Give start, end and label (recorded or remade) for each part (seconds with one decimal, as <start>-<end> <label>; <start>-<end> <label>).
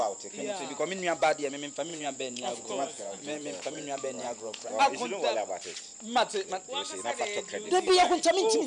0.0-1.9 recorded; 1.9-4.8 remade; 4.8-8.7 recorded